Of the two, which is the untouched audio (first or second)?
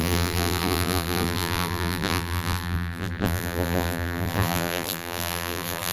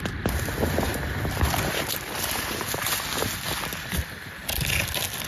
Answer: second